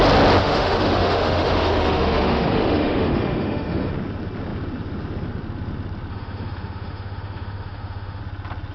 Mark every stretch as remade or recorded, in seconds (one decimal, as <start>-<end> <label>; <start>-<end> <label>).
0.0-0.4 recorded; 0.4-3.9 remade; 3.9-6.1 recorded; 6.1-8.2 remade; 8.2-8.7 recorded